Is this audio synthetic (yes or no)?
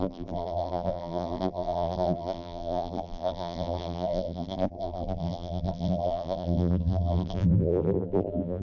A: yes